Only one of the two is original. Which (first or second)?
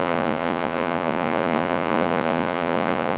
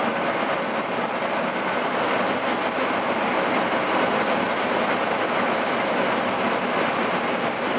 second